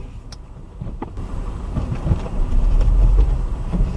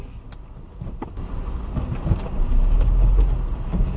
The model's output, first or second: first